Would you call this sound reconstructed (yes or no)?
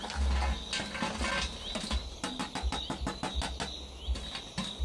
no